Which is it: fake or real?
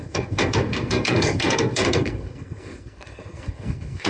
fake